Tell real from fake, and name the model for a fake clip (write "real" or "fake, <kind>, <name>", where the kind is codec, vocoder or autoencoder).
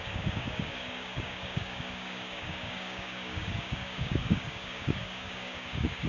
fake, codec, DAC